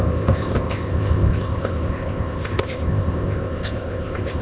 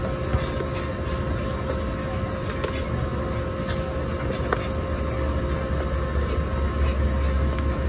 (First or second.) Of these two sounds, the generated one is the first